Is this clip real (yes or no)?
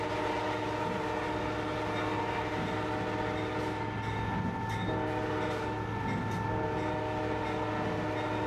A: yes